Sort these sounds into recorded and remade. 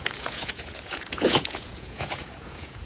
remade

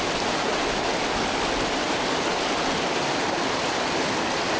recorded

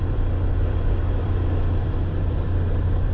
remade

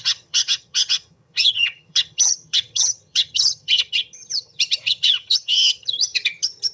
remade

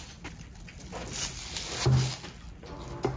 recorded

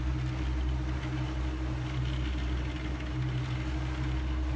recorded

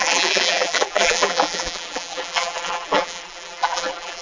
remade